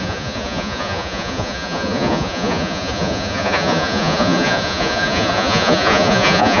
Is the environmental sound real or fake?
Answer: fake